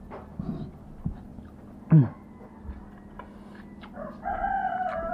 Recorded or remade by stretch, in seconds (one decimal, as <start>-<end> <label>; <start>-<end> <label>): 0.0-5.1 recorded